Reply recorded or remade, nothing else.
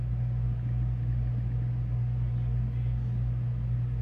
recorded